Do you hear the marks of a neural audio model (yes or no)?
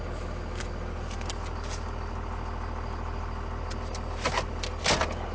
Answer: no